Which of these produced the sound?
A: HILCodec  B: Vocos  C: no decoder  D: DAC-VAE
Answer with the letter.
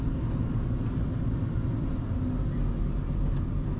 C